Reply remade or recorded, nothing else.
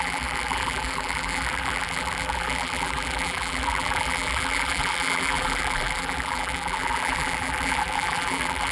remade